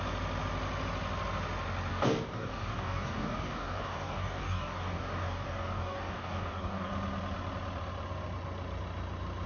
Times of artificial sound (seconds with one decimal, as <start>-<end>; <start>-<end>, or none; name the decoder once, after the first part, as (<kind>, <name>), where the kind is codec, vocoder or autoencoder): 1.9-6.9 (codec, DAC)